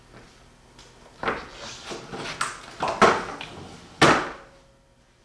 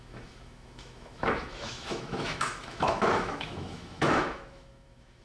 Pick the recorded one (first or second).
first